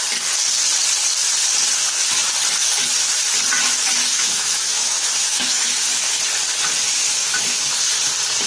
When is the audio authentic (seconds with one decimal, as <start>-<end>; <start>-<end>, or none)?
0.0-4.0; 6.2-7.2; 7.7-8.5